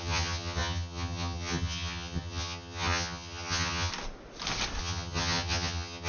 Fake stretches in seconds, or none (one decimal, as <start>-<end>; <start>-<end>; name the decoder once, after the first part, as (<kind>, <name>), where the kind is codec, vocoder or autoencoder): 0.0-3.9 (vocoder, HiFi-GAN); 4.8-6.1